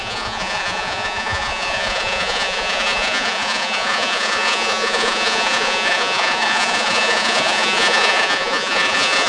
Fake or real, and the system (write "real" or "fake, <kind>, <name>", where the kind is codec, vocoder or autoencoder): fake, vocoder, Vocos